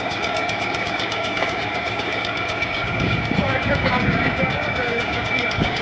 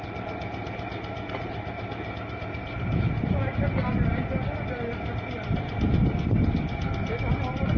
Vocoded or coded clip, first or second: first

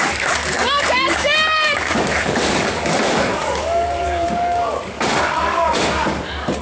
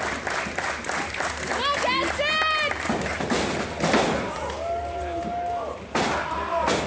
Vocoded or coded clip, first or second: first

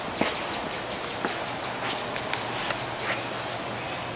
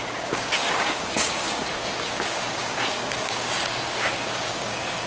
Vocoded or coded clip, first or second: second